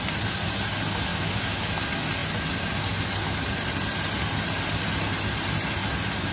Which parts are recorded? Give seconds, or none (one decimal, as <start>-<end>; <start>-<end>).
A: 0.0-1.1; 1.7-6.3